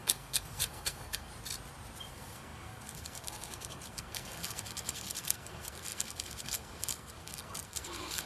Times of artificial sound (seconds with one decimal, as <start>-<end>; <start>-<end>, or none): 0.0-1.3; 2.1-8.3